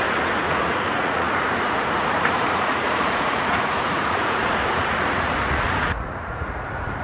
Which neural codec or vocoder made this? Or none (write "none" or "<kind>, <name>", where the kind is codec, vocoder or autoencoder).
vocoder, Vocos